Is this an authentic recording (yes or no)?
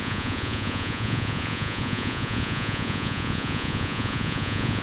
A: no